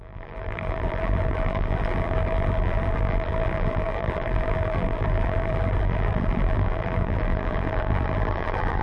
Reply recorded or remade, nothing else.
remade